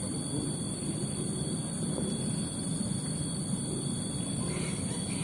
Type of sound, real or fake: fake